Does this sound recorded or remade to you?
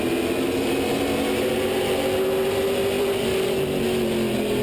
recorded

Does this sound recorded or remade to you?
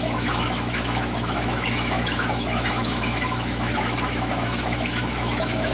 remade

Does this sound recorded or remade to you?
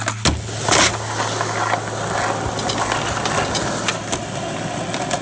recorded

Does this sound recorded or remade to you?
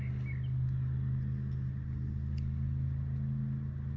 recorded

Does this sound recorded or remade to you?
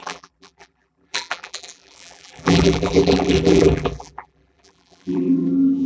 remade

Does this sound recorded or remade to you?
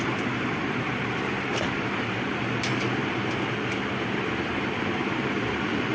remade